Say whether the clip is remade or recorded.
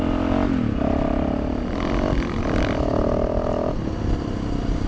recorded